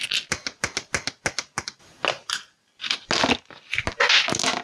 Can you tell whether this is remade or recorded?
recorded